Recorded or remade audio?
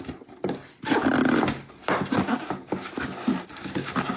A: recorded